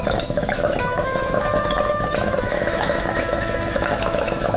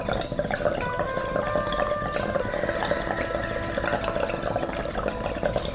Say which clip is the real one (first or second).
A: second